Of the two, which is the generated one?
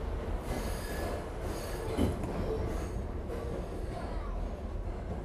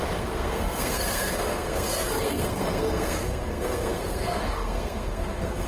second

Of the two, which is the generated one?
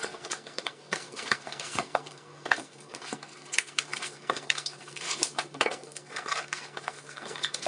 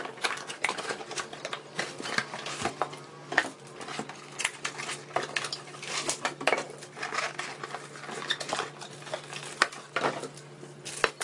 first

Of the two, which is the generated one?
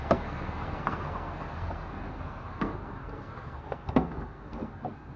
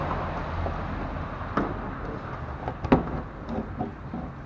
first